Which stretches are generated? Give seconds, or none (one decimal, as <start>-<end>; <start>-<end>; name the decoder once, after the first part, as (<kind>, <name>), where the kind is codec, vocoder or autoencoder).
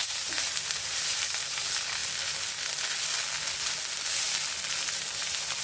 0.0-1.6 (vocoder, BigVGAN v2)